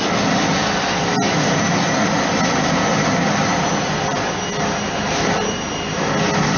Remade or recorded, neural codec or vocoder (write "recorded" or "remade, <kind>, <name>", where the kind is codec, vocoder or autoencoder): recorded